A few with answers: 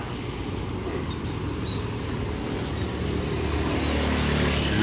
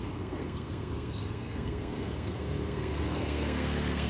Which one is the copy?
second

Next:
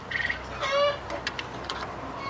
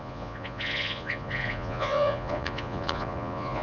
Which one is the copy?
second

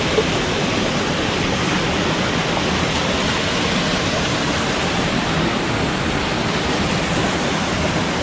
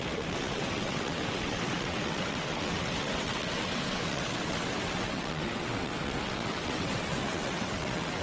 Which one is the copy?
second